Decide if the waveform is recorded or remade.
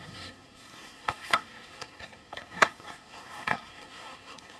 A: remade